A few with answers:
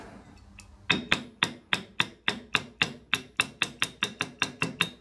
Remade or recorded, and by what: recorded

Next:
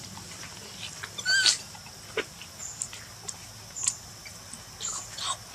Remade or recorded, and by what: recorded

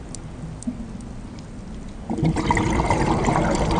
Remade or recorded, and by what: recorded